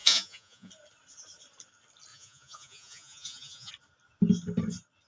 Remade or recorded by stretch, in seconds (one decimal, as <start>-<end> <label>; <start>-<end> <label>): 0.0-0.7 remade; 0.7-2.1 recorded; 2.1-3.7 remade; 3.7-5.1 recorded